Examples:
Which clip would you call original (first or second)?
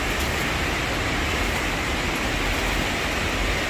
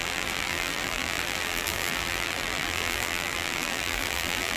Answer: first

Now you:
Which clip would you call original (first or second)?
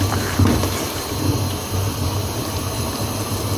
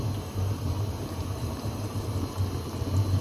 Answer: first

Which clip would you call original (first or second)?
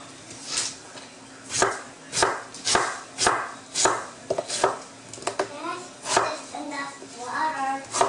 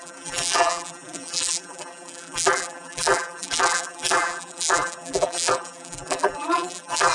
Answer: first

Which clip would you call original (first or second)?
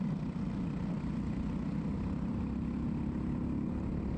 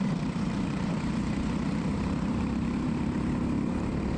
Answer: first